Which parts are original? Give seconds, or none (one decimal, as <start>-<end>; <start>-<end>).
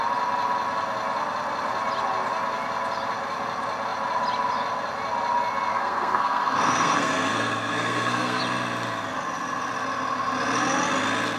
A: 0.0-5.7; 8.4-11.4